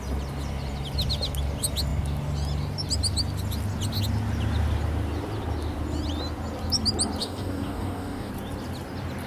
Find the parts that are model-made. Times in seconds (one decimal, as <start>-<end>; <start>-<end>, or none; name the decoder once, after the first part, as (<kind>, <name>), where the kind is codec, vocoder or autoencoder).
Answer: 7.2-8.3 (codec, DAC)